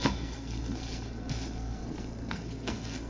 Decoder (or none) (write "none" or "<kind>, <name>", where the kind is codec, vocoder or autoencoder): codec, SNAC